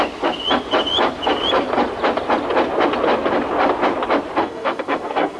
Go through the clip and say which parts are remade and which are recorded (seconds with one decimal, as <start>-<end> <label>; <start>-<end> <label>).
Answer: 0.0-4.4 recorded; 4.4-5.4 remade